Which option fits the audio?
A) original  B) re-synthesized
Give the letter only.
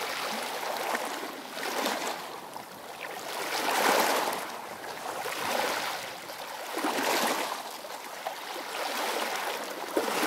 A